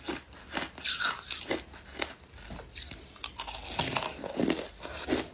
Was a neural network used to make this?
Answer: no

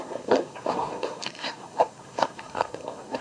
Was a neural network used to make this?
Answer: yes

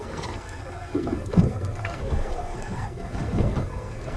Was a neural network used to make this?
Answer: yes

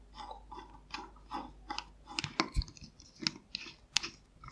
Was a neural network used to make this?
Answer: no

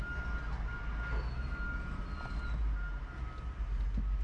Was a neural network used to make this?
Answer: no